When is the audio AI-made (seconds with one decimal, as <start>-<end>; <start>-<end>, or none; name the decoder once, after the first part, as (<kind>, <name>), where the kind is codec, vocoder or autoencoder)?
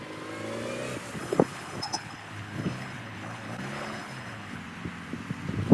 1.2-4.6 (codec, HILCodec)